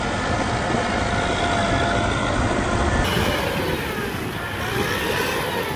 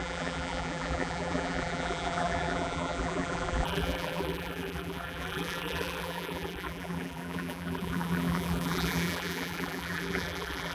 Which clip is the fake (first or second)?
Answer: second